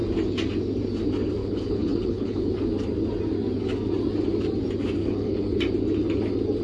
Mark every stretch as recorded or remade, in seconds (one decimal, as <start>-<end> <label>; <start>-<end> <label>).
0.0-1.4 recorded; 1.4-2.5 remade; 2.5-5.0 recorded; 5.0-5.6 remade; 5.6-6.6 recorded